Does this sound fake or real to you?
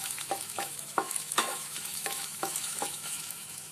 fake